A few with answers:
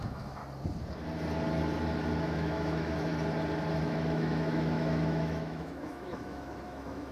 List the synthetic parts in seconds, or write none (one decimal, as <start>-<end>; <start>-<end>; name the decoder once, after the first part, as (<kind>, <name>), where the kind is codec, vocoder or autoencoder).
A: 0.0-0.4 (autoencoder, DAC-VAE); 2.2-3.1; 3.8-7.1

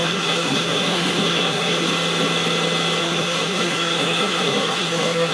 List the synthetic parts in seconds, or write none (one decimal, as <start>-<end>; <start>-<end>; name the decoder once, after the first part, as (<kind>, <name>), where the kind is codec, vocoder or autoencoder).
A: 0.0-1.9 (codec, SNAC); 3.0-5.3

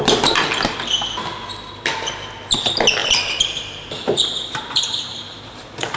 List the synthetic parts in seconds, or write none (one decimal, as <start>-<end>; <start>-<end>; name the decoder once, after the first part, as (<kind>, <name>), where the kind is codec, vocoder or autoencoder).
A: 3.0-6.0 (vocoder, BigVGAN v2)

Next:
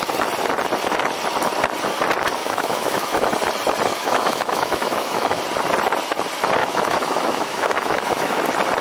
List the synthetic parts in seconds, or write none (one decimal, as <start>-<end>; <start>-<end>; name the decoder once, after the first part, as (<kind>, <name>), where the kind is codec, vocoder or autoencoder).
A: 2.4-3.3 (autoencoder, DAC-VAE); 3.9-5.4; 6.6-8.4